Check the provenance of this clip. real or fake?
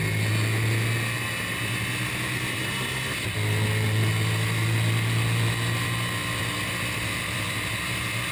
real